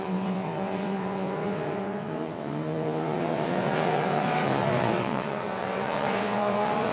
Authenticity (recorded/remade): remade